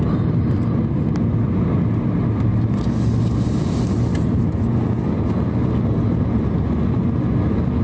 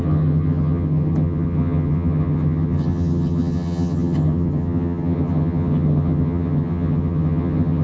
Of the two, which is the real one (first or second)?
first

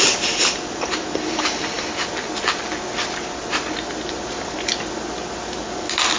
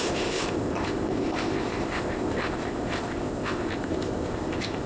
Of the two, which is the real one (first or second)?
first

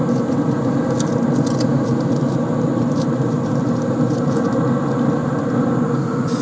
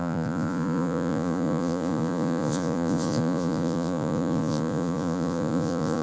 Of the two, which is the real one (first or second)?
first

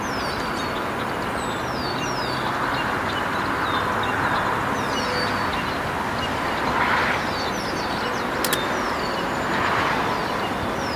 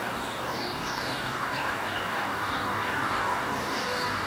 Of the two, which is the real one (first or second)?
first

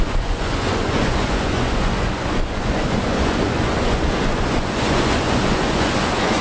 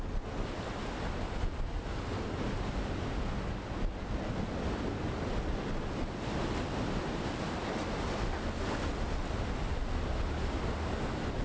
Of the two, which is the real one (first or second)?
second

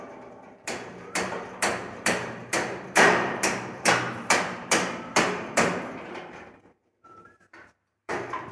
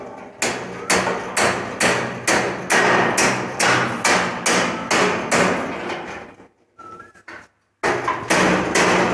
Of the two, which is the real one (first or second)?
second